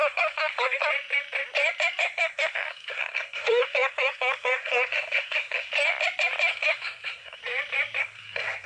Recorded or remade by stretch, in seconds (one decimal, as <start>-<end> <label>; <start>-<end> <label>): 0.0-0.8 remade; 0.8-2.0 recorded; 2.0-5.7 remade; 5.7-6.5 recorded; 6.5-7.4 remade; 7.4-8.0 recorded; 8.0-8.7 remade